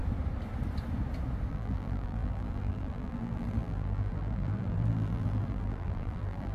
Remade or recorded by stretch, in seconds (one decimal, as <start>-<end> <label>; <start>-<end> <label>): 0.0-1.5 recorded; 1.5-6.5 remade